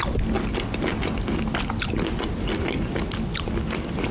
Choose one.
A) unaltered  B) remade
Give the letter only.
A